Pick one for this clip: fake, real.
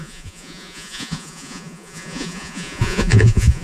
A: fake